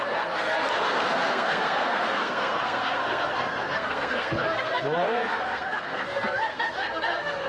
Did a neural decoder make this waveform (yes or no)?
yes